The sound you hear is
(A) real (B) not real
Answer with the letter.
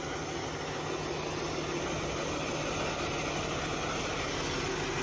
A